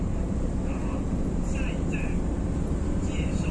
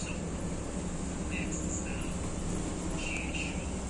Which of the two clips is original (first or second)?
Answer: second